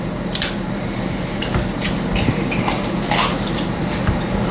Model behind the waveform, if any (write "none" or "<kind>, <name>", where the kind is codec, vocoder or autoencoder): vocoder, BigVGAN v2